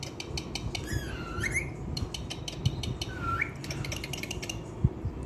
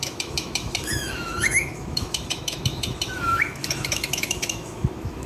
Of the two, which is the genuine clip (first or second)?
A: first